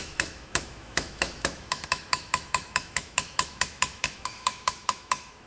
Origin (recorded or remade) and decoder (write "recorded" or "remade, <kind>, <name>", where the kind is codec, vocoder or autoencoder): remade, autoencoder, DAC-VAE